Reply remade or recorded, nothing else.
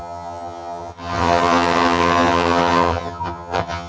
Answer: remade